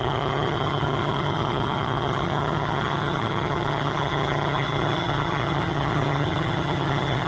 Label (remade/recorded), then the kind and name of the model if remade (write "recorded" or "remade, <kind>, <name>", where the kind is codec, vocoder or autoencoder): remade, vocoder, HiFi-GAN